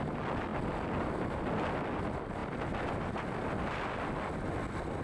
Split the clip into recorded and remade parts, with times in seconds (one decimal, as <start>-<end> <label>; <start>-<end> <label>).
0.0-5.0 recorded